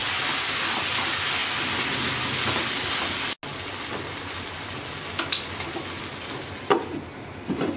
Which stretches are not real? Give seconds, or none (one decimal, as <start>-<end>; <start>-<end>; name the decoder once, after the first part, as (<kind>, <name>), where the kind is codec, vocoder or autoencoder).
none